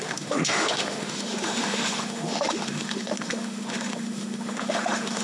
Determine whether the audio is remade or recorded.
remade